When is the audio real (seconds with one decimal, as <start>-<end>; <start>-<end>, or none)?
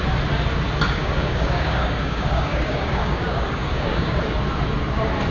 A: 0.0-1.0; 4.2-5.3